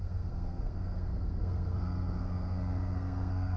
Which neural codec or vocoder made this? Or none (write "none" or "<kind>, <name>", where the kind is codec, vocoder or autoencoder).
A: codec, SNAC